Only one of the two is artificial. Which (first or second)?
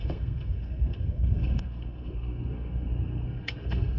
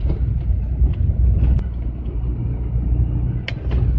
first